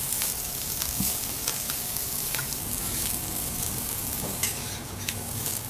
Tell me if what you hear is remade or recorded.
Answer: remade